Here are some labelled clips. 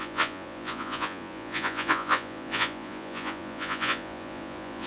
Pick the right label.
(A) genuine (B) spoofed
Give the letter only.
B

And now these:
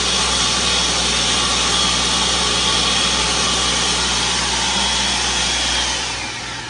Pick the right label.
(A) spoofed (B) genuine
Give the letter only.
B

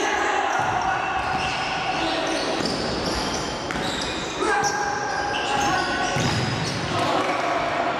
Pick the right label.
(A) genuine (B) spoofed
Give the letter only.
A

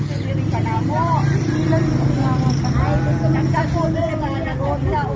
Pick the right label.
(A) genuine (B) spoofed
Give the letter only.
A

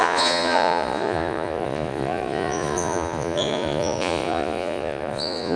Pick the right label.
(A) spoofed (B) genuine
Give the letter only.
A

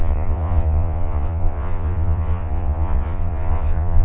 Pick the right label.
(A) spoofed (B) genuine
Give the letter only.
A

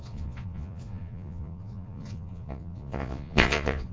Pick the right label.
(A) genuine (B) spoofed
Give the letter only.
B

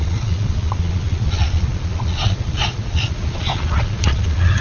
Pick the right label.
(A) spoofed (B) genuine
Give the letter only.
A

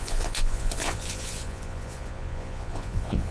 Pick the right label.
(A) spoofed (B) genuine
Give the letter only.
A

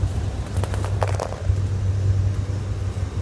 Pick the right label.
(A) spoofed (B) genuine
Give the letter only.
B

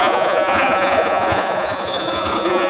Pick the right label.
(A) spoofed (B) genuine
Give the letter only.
A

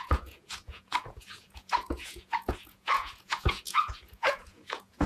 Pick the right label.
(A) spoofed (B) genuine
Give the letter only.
A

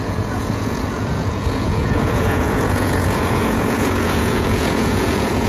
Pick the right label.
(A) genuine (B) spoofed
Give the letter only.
B